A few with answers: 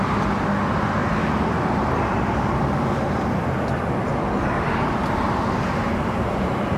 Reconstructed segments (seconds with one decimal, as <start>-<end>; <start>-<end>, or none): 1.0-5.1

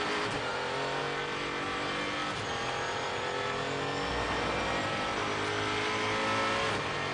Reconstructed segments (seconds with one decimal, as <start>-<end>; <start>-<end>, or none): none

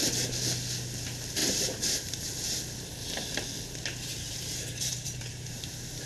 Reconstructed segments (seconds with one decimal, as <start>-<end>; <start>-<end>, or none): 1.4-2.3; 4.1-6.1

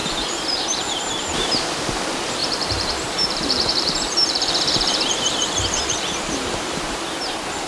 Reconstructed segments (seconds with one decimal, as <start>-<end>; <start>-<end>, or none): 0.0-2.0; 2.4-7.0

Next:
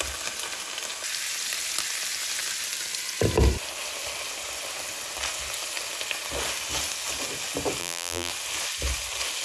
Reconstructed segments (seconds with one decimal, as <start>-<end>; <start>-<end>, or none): 7.8-8.3